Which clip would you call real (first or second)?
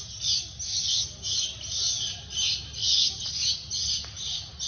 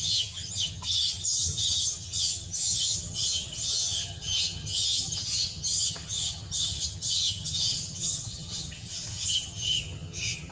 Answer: first